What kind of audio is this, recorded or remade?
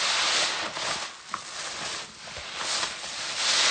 recorded